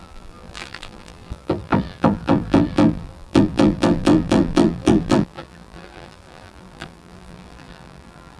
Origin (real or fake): fake